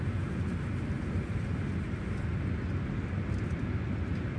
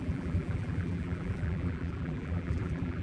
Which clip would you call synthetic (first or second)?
second